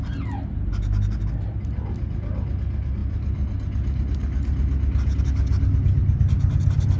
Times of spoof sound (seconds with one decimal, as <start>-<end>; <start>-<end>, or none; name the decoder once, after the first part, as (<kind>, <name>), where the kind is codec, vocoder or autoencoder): none